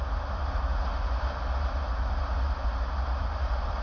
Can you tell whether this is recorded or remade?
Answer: recorded